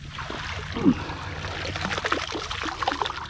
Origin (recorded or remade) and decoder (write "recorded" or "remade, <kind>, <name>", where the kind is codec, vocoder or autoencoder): recorded